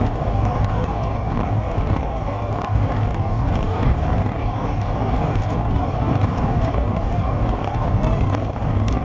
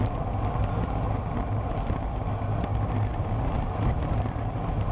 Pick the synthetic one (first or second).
first